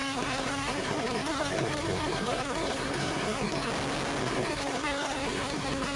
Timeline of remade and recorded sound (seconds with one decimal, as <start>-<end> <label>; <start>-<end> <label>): 0.0-3.7 remade; 3.7-4.2 recorded; 4.2-6.0 remade